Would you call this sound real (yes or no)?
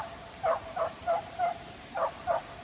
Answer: yes